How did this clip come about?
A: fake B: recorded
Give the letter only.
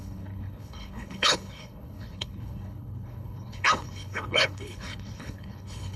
A